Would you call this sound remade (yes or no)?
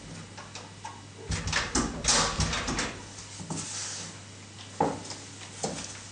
no